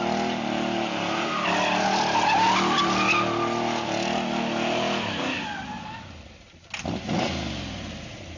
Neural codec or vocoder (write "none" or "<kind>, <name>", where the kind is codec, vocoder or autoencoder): none